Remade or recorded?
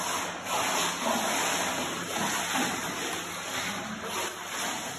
recorded